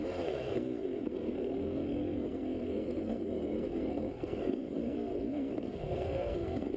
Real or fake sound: fake